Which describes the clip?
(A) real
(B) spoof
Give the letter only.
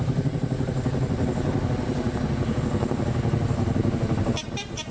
A